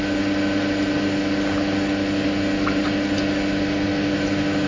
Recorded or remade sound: recorded